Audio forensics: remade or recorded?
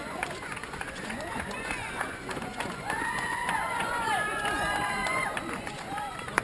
remade